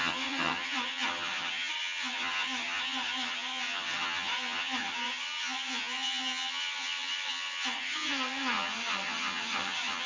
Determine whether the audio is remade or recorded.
remade